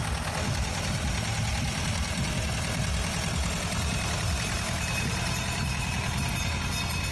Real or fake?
real